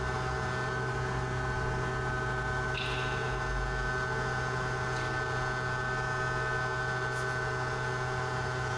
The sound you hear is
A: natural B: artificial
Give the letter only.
A